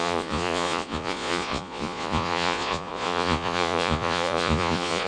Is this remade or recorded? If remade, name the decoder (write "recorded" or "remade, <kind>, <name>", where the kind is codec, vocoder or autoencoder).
remade, vocoder, Vocos